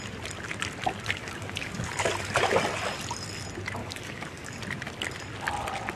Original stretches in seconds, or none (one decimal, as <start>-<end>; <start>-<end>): 0.0-1.2; 1.9-3.8; 4.6-6.0